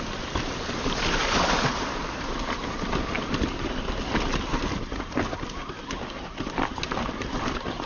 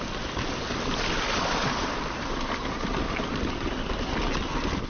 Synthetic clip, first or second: first